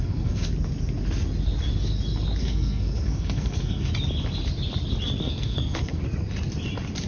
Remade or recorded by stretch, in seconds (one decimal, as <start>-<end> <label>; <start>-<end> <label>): 0.0-0.5 remade; 0.5-2.4 recorded; 2.4-3.9 remade; 3.9-5.2 recorded; 5.2-6.0 remade; 6.0-7.1 recorded